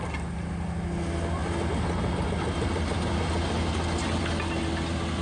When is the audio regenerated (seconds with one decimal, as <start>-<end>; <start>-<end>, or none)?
none

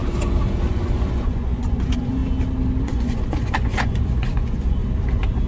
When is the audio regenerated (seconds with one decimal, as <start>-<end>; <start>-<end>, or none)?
0.7-2.2; 2.8-4.8

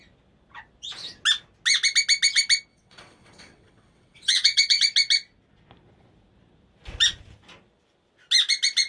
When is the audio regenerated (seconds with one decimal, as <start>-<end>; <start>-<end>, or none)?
2.7-4.8

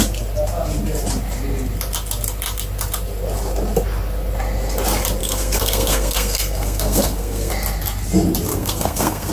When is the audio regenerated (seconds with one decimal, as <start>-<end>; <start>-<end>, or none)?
5.2-7.5; 8.5-9.3

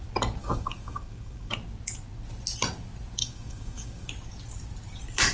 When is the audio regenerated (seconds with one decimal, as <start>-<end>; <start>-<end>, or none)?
0.4-1.5; 3.2-4.1